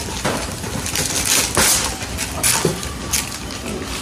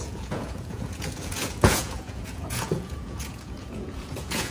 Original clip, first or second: first